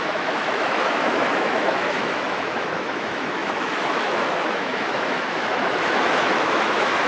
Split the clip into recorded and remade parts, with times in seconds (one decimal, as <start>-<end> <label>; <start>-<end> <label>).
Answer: 0.0-7.1 remade